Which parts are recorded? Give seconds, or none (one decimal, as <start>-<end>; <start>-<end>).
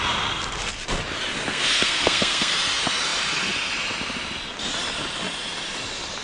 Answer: 0.0-1.5; 2.5-6.2